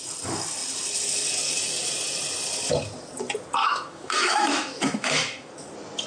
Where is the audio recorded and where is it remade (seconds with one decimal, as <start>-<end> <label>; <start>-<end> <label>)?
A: 0.0-3.6 recorded; 3.6-5.5 remade; 5.5-6.1 recorded